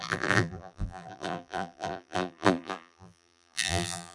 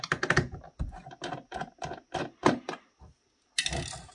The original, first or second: second